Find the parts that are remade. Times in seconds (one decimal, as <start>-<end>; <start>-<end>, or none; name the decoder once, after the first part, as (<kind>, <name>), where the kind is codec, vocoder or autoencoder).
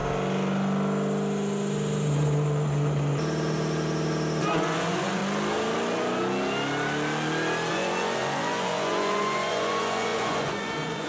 4.4-5.2 (vocoder, Vocos); 7.7-11.1